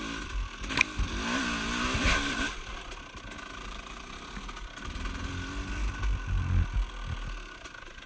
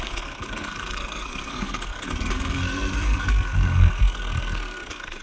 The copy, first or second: second